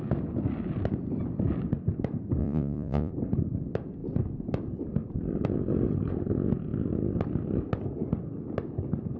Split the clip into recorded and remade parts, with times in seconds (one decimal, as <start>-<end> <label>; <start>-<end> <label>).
0.0-2.4 recorded; 2.4-3.1 remade; 3.1-9.2 recorded